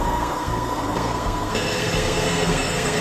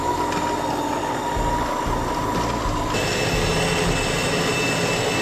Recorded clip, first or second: second